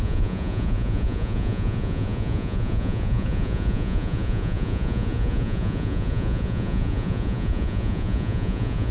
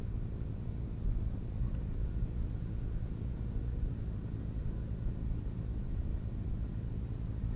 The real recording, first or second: second